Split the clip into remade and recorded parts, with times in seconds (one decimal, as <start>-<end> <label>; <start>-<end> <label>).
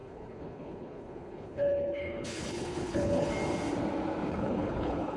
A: 0.0-3.3 remade; 3.3-4.3 recorded; 4.3-5.2 remade